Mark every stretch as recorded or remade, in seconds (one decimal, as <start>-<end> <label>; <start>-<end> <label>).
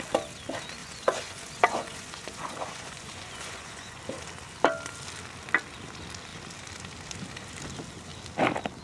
0.0-0.8 recorded; 0.8-4.0 remade; 4.0-8.8 recorded